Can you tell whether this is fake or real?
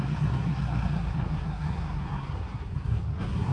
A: fake